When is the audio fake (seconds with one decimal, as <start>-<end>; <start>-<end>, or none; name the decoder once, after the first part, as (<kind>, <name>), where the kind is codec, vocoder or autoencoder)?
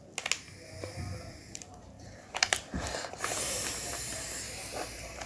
1.7-5.3 (vocoder, BigVGAN v2)